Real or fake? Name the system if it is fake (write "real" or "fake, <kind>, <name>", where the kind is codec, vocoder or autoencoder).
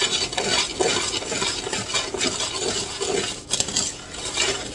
real